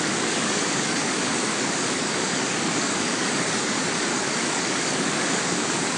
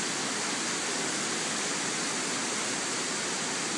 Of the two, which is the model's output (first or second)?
first